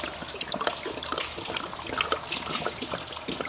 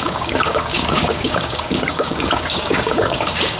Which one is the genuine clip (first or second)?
first